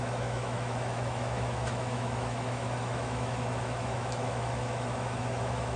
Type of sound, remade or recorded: remade